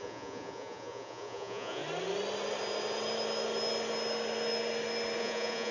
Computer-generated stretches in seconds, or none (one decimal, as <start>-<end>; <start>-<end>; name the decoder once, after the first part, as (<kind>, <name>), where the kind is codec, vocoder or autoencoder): 0.0-1.8 (vocoder, Vocos); 5.2-5.7